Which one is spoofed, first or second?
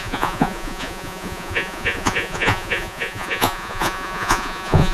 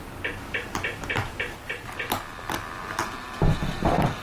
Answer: first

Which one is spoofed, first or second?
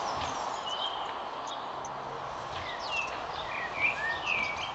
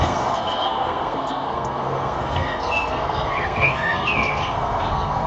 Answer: second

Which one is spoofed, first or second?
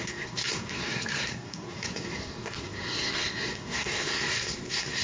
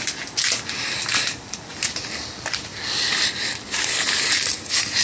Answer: first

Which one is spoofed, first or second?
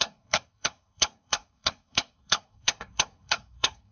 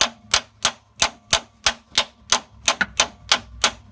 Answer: first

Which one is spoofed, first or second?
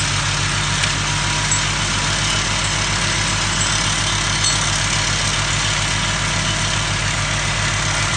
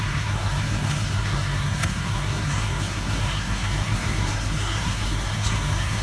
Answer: second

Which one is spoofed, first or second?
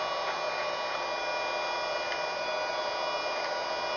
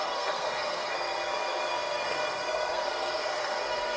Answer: second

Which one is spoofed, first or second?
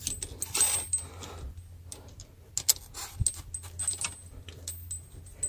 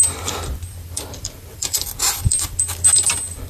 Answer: second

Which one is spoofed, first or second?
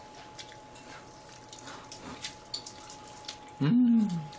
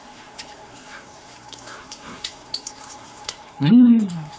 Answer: second